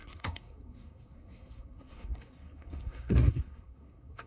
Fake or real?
fake